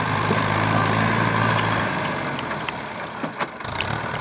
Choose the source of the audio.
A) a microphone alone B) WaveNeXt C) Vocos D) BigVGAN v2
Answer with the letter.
D